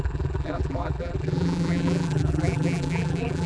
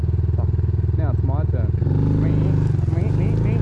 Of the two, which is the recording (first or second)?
second